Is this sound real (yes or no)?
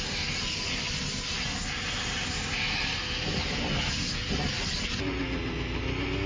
yes